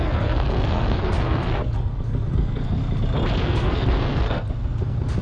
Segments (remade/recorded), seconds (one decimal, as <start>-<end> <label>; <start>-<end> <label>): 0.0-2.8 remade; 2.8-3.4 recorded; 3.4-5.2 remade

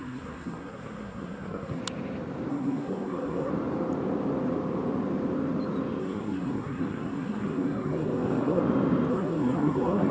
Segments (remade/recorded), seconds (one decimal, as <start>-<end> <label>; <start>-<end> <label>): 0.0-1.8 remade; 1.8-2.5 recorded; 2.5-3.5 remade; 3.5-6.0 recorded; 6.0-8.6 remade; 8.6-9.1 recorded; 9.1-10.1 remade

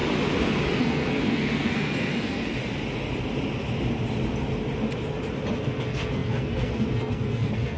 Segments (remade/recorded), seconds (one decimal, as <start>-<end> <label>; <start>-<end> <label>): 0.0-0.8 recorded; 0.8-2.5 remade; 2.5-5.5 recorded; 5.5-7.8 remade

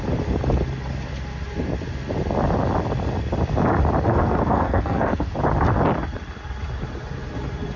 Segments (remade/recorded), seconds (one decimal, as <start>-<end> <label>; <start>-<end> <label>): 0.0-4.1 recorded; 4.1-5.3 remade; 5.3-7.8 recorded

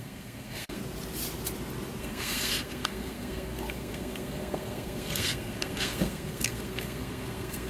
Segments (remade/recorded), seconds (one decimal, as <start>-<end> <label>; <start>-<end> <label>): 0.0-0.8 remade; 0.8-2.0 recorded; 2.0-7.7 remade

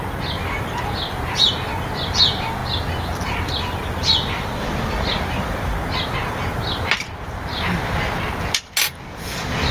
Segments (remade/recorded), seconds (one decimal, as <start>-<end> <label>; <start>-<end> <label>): 0.0-9.7 recorded